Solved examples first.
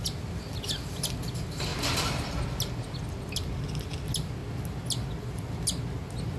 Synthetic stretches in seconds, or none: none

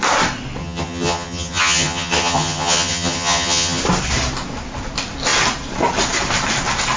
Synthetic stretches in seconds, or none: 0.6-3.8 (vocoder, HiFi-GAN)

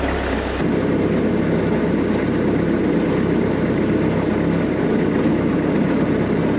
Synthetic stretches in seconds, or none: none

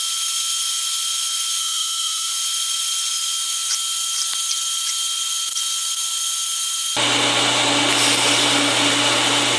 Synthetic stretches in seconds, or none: 1.6-2.3 (autoencoder, DAC-VAE)

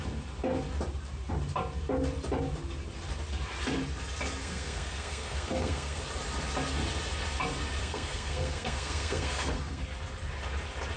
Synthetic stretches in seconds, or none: 4.4-6.0 (codec, SNAC); 7.8-9.8

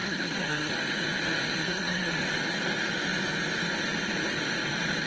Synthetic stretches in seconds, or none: 0.0-0.7 (codec, SNAC); 1.6-2.2